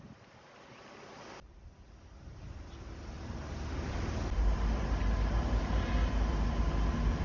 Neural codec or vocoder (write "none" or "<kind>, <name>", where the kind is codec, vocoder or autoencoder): none